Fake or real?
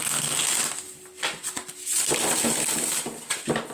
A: real